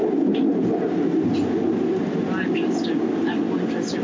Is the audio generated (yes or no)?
no